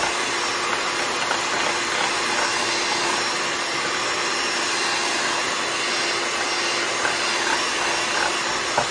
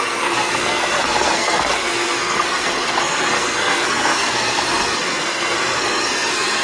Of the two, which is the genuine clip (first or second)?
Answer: first